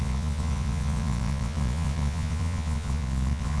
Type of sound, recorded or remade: remade